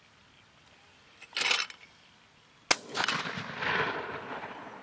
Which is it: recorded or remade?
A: recorded